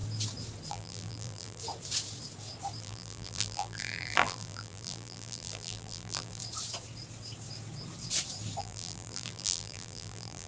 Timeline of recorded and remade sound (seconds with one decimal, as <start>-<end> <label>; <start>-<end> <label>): 0.0-0.7 recorded; 0.7-1.6 remade; 1.6-2.8 recorded; 2.8-6.4 remade; 6.4-8.6 recorded; 8.6-10.5 remade